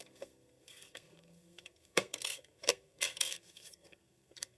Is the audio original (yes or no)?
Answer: no